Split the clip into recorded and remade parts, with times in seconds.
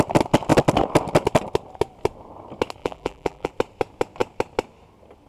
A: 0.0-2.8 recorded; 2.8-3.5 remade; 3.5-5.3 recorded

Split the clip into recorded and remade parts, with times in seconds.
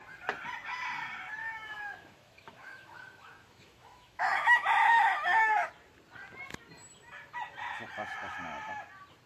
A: 0.0-1.4 recorded; 1.4-5.7 remade; 5.7-9.3 recorded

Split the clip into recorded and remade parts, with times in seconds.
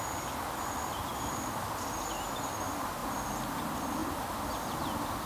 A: 0.0-5.3 recorded